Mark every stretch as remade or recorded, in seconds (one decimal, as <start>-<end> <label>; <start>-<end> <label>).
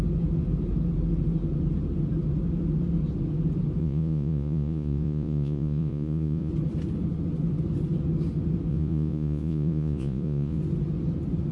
0.0-3.8 recorded; 3.8-6.5 remade; 6.5-8.7 recorded; 8.7-10.6 remade; 10.6-11.5 recorded